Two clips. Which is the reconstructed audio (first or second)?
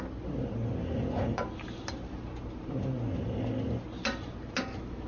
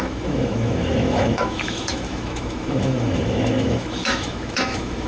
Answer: second